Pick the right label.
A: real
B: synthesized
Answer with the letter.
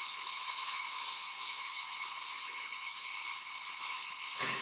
B